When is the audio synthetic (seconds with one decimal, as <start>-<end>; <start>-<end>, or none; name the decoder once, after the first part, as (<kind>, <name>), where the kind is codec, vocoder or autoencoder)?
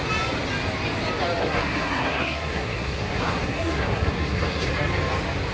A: 1.4-4.7 (codec, SNAC)